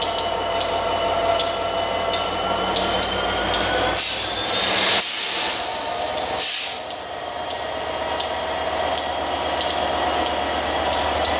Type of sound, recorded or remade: recorded